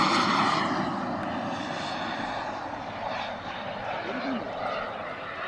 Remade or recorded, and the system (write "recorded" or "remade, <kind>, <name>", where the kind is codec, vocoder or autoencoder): recorded